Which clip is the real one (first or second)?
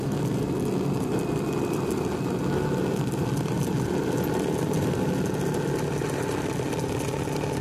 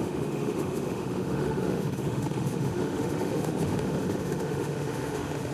first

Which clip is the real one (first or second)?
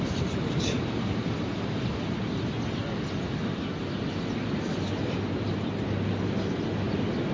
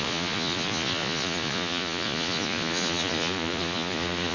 first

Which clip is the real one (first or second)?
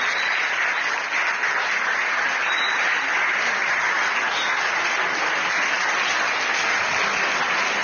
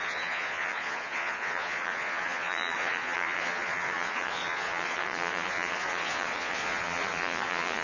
first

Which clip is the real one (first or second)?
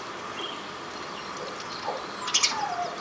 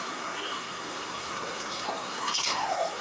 first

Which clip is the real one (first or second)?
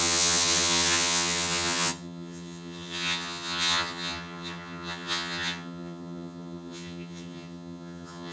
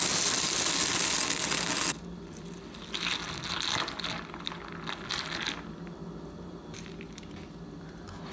second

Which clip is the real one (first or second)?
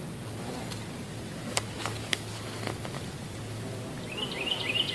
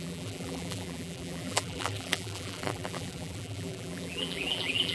first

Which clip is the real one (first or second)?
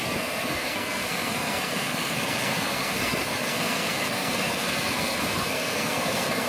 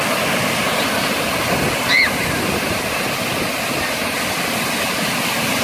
second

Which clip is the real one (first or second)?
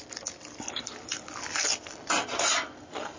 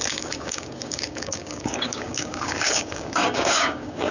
first